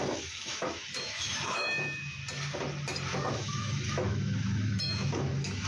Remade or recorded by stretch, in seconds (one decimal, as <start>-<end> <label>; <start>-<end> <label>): 0.0-2.2 remade; 2.2-3.3 recorded; 3.3-5.7 remade